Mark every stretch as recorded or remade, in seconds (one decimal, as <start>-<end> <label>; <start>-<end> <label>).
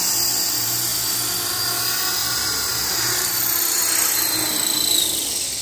0.0-2.2 recorded; 2.2-3.8 remade; 3.8-5.6 recorded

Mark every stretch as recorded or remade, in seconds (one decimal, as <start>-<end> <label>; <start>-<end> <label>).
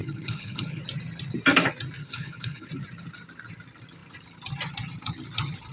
0.0-0.8 remade; 0.8-2.0 recorded; 2.0-2.7 remade; 2.7-5.7 recorded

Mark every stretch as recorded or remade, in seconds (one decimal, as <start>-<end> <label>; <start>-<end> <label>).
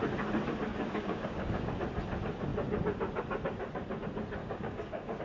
0.0-0.7 recorded; 0.7-1.7 remade; 1.7-4.4 recorded; 4.4-5.2 remade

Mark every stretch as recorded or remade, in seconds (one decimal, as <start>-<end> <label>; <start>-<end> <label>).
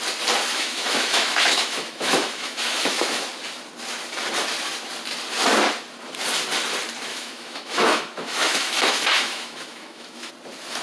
0.0-0.5 recorded; 0.5-3.3 remade; 3.3-7.1 recorded; 7.1-10.3 remade; 10.3-10.8 recorded